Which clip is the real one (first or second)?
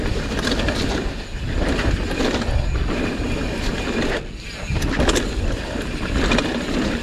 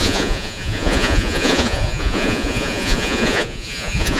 first